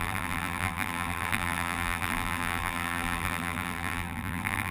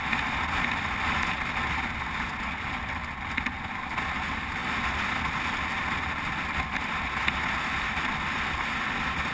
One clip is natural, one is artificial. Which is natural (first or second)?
second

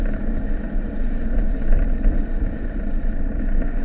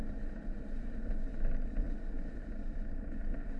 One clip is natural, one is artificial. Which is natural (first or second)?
second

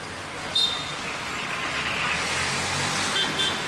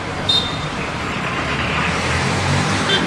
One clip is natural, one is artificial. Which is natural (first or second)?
first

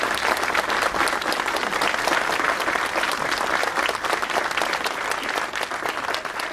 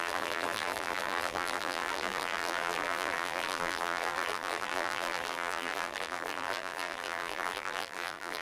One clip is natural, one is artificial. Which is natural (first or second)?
first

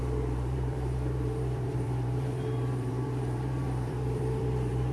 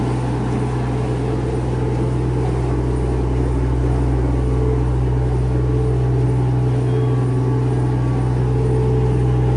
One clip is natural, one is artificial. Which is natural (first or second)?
second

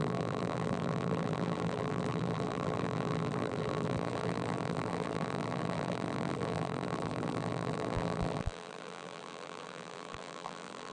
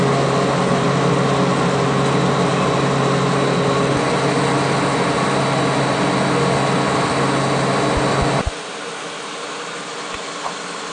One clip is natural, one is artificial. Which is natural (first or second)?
second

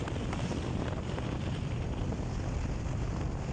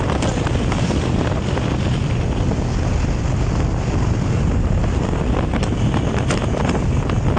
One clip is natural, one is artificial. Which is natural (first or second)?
second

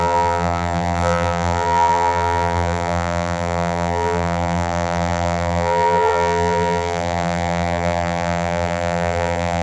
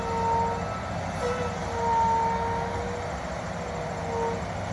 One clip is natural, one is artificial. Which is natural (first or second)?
second